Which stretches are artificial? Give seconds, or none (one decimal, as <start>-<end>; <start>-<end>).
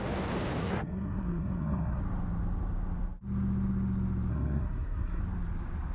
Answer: 0.6-2.0; 4.3-5.2